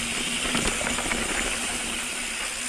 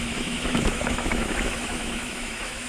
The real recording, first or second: first